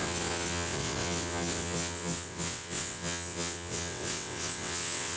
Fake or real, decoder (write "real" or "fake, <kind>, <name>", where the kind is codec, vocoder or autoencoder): fake, vocoder, WaveNeXt